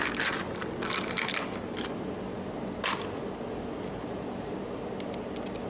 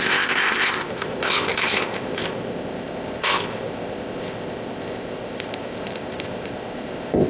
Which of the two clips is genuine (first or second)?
first